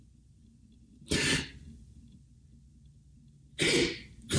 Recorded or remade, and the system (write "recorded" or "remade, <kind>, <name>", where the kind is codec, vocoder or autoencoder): recorded